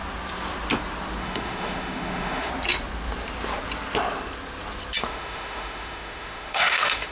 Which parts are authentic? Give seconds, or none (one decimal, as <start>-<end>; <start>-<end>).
0.0-1.2; 2.5-5.0